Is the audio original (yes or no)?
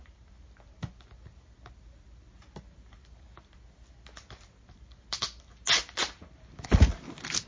yes